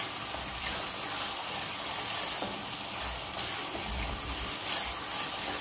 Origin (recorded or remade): recorded